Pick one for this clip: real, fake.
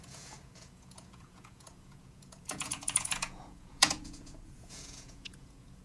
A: fake